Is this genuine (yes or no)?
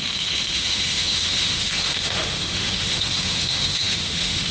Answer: no